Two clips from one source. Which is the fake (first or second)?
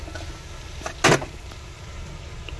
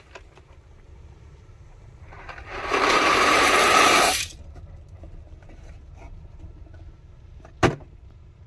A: second